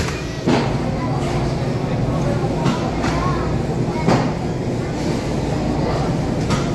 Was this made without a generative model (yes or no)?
yes